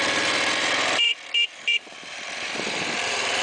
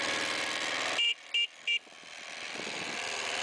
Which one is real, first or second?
second